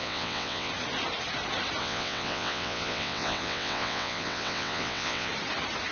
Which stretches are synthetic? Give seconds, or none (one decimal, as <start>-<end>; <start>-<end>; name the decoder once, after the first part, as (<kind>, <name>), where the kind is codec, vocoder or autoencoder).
0.0-0.7 (vocoder, WaveNeXt); 1.8-5.3